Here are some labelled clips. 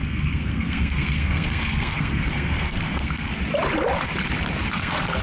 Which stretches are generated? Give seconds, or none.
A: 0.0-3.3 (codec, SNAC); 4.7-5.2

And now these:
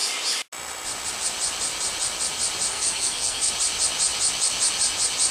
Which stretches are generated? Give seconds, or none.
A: 2.7-3.5 (codec, SNAC)

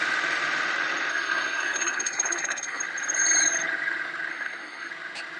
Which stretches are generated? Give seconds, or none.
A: 1.1-2.8 (codec, SNAC); 4.3-4.9

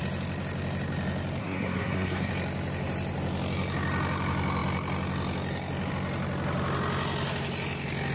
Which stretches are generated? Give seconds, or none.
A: 1.4-2.3 (codec, SNAC)

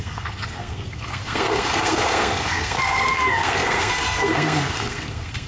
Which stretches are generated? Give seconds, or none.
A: 0.0-5.5 (codec, SNAC)

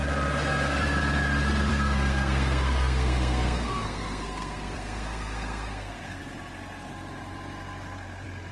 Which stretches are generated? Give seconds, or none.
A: 1.7-6.2 (codec, SNAC)

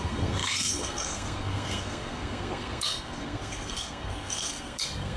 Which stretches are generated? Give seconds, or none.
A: 0.0-5.2 (codec, SNAC)

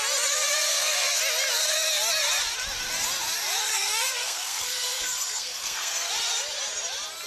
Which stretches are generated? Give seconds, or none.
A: 0.7-1.2 (codec, SNAC); 3.7-6.1